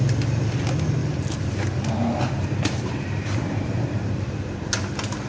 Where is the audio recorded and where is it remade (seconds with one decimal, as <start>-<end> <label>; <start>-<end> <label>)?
0.0-1.0 recorded; 1.0-4.2 remade; 4.2-5.3 recorded